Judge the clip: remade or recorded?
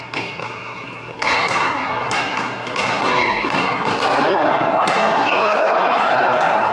remade